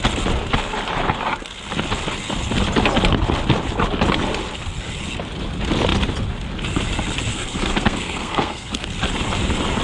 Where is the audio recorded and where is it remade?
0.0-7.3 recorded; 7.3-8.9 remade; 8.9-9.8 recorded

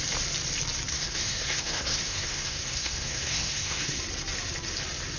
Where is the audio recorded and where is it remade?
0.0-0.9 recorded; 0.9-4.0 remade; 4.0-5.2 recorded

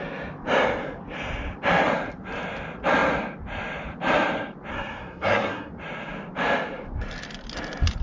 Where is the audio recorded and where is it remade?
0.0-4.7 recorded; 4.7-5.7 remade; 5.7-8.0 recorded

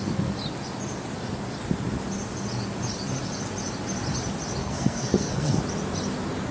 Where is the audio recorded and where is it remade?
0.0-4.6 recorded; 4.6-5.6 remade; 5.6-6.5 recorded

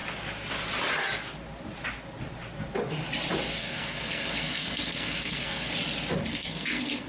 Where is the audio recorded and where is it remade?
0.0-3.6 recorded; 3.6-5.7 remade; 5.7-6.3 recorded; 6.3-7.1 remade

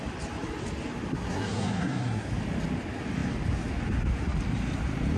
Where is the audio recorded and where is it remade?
0.0-1.1 recorded; 1.1-2.3 remade; 2.3-5.2 recorded

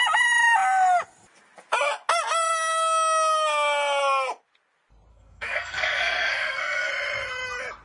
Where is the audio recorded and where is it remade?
0.0-5.1 recorded; 5.1-6.9 remade; 6.9-7.8 recorded